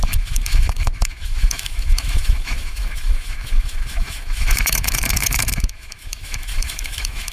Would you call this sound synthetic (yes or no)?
yes